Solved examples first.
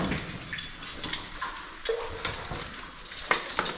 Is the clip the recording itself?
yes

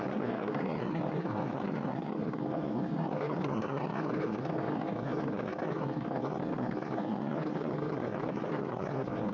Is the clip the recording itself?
no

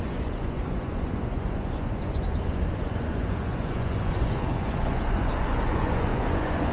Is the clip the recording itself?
no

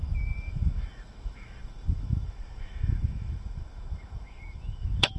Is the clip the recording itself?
no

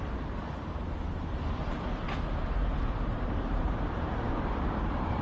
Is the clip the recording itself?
no